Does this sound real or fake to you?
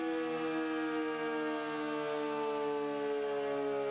real